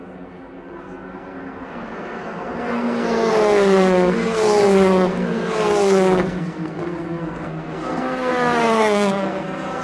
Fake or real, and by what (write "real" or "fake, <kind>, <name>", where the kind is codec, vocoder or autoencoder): fake, codec, SNAC